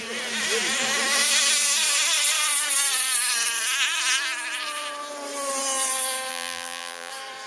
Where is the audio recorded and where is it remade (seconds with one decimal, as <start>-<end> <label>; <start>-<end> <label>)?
0.0-6.3 recorded; 6.3-7.1 remade; 7.1-7.5 recorded